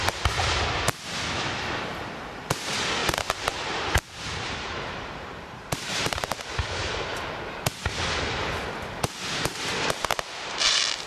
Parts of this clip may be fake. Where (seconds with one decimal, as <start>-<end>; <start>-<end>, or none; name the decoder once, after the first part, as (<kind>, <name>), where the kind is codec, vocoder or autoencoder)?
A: 3.0-6.4 (vocoder, BigVGAN v2)